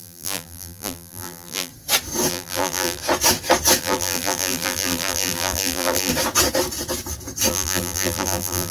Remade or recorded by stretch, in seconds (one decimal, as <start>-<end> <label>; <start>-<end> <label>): 0.0-1.7 remade; 1.7-2.3 recorded; 2.3-3.0 remade; 3.0-3.8 recorded; 3.8-6.1 remade; 6.1-7.5 recorded; 7.5-8.7 remade